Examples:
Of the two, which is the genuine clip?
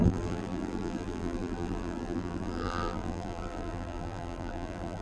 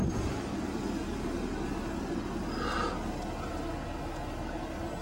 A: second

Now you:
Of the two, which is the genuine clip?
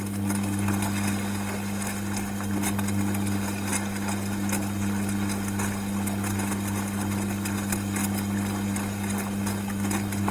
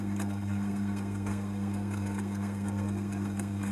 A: first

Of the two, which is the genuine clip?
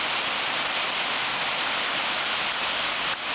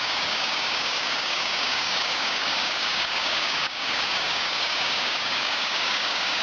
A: first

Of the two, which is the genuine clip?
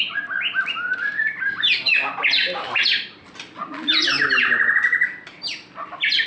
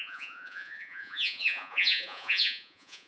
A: first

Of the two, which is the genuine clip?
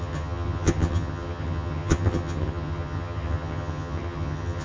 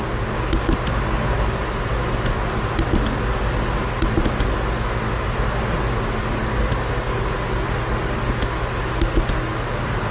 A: second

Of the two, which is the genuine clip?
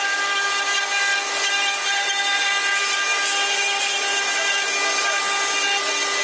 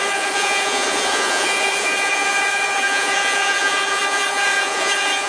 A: first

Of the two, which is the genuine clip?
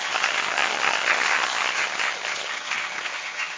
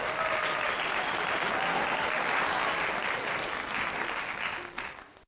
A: second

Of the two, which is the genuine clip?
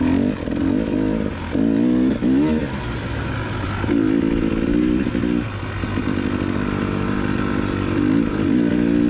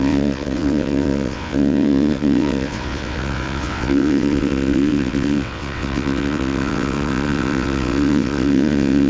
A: first